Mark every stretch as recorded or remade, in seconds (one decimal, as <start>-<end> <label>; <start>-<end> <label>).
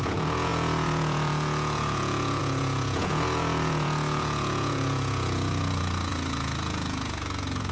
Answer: 0.0-7.7 remade